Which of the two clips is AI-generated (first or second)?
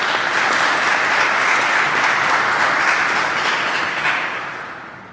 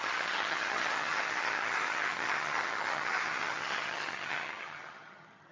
second